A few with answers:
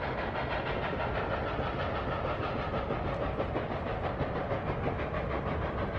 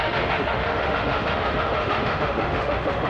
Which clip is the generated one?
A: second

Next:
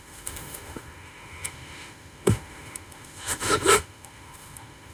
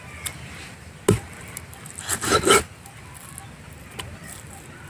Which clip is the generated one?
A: first